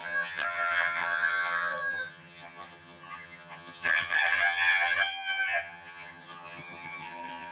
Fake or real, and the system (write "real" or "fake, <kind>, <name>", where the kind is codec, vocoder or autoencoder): fake, vocoder, HiFi-GAN